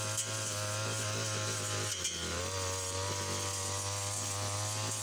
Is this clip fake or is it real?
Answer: real